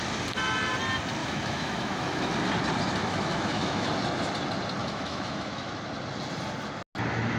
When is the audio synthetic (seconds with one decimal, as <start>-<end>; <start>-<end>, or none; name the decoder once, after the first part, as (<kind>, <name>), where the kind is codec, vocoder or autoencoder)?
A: 1.2-2.3 (autoencoder, DAC-VAE); 3.0-3.9; 4.8-5.7